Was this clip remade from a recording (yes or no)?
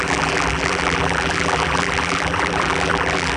yes